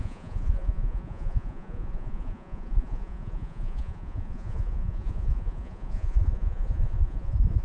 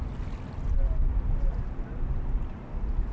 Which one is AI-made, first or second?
first